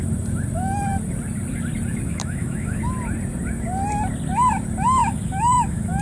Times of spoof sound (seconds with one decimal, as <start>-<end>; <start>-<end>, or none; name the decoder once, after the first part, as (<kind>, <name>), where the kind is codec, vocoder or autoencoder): 2.1-2.8 (autoencoder, DAC-VAE); 5.0-6.0